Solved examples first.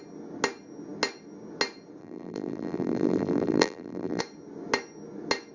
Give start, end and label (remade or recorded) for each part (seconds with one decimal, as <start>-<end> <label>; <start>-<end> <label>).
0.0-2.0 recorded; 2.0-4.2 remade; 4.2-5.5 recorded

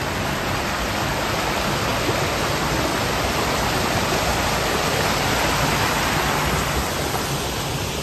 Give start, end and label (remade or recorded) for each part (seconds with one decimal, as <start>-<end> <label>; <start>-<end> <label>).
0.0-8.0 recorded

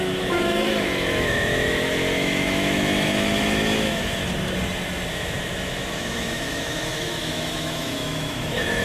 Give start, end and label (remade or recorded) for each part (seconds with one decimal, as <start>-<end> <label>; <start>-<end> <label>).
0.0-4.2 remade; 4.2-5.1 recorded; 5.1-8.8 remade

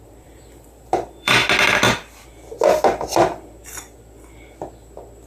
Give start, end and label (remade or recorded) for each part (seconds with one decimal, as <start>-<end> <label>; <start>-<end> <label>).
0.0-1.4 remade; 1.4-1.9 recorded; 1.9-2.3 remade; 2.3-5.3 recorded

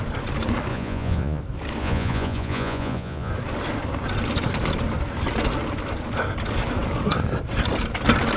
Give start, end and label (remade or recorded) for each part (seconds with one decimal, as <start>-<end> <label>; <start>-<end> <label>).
0.0-0.7 recorded; 0.7-1.4 remade; 1.4-1.8 recorded; 1.8-3.3 remade; 3.3-8.4 recorded

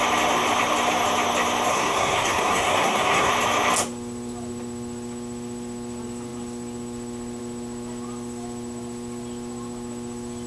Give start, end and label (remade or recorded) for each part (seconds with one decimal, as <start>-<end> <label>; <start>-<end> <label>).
0.0-1.7 recorded; 1.7-3.3 remade; 3.3-10.5 recorded

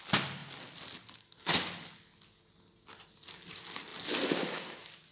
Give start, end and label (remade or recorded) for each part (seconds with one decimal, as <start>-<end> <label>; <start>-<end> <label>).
0.0-5.1 recorded